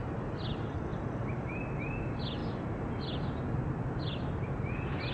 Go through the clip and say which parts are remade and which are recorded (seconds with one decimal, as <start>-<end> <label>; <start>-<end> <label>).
0.0-0.9 recorded; 0.9-1.5 remade; 1.5-2.4 recorded; 2.4-2.9 remade; 2.9-5.1 recorded